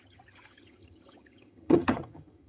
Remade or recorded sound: remade